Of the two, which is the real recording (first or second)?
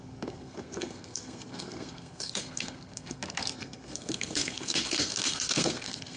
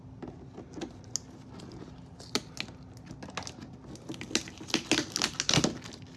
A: second